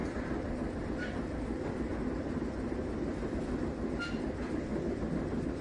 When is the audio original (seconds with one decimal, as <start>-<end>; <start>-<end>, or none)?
0.9-5.6